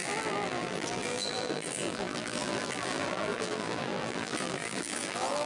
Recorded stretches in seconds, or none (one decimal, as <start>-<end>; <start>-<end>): none